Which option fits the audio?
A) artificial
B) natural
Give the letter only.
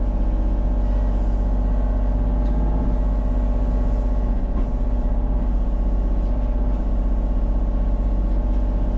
B